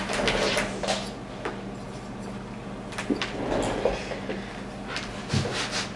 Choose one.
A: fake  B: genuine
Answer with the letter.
B